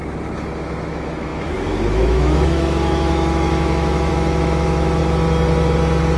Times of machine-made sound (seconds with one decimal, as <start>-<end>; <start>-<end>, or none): 0.6-5.0